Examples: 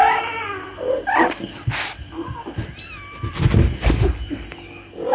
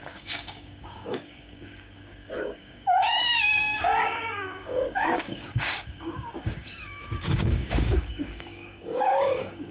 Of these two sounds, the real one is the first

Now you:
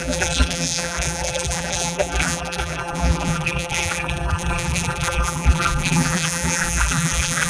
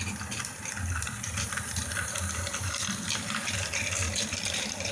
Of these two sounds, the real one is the second